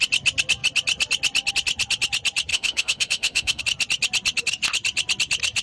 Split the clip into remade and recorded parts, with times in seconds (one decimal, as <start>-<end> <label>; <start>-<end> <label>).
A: 0.0-2.5 recorded; 2.5-3.6 remade; 3.6-5.6 recorded